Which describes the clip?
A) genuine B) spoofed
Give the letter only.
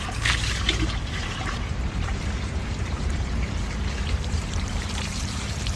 B